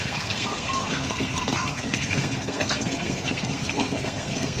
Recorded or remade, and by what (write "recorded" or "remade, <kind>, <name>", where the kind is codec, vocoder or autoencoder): remade, codec, SNAC